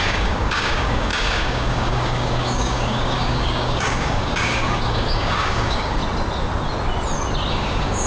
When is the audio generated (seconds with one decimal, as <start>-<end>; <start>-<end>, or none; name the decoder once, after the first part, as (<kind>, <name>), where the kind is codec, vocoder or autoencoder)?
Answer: 0.0-6.0 (codec, DAC); 7.5-8.1